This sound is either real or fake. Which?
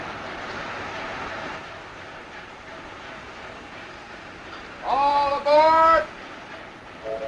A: fake